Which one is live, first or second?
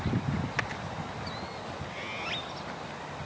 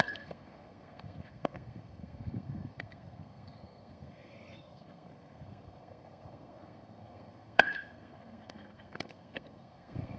first